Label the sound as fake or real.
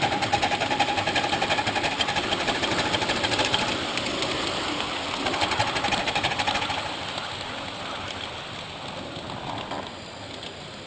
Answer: real